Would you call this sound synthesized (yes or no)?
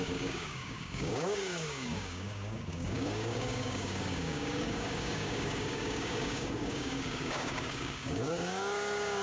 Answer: yes